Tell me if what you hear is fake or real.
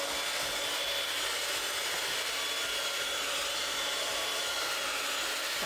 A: real